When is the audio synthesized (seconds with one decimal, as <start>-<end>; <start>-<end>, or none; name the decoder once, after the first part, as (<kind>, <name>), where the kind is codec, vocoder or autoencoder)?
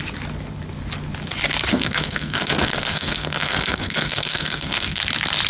1.7-5.0 (codec, SNAC)